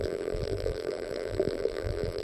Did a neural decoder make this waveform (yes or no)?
yes